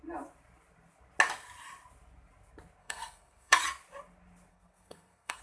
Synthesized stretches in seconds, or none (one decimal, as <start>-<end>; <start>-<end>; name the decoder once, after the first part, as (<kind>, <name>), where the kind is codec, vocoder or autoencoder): 2.8-3.6 (codec, SNAC); 4.5-5.4

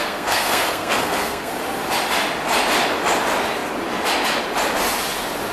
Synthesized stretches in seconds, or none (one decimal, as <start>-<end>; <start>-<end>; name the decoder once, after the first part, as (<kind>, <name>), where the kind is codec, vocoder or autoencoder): 0.0-1.5 (codec, SNAC)

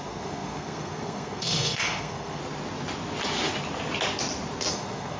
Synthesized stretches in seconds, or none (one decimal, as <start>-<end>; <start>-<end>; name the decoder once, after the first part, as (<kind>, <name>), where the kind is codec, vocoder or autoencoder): 0.0-2.4 (codec, SNAC); 4.7-5.2